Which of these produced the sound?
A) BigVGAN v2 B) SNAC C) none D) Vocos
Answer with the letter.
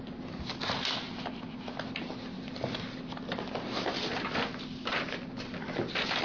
C